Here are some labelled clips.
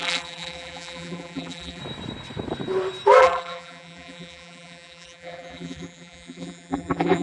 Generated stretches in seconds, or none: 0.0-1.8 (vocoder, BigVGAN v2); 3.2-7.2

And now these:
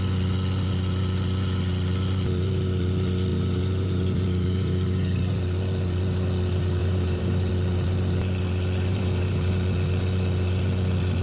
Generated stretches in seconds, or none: 3.3-5.3 (vocoder, BigVGAN v2); 6.8-7.5; 8.9-9.5

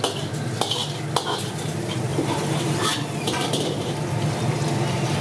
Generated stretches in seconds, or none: 2.1-5.2 (vocoder, BigVGAN v2)

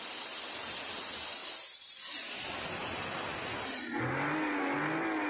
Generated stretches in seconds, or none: none

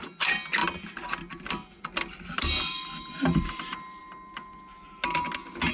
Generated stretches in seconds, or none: 0.6-4.0 (vocoder, BigVGAN v2)

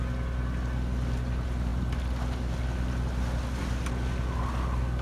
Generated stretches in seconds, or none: none